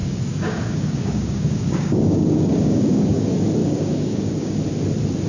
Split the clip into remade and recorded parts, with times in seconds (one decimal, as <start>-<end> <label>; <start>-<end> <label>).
0.0-3.2 remade; 3.2-3.6 recorded; 3.6-4.6 remade; 4.6-5.3 recorded